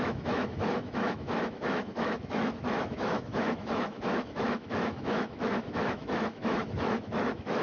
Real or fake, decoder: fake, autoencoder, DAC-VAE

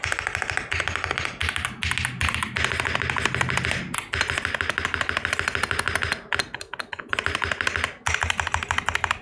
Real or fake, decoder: real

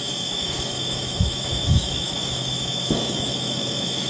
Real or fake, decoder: fake, autoencoder, DAC-VAE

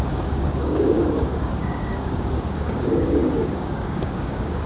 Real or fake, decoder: fake, codec, DAC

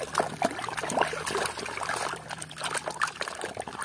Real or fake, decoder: real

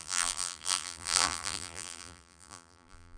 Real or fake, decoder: fake, vocoder, BigVGAN v2